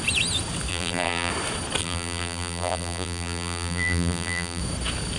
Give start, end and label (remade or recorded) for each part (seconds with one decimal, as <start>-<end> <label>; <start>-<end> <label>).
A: 0.0-0.7 recorded; 0.7-1.3 remade; 1.3-1.8 recorded; 1.8-4.6 remade; 4.6-5.2 recorded